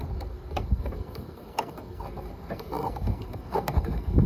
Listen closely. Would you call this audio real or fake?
fake